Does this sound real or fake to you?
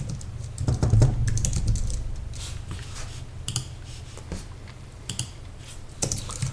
real